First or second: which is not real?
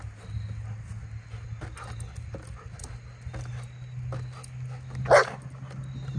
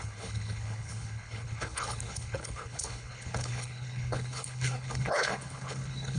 second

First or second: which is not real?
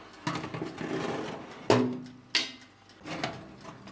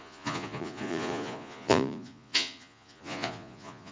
second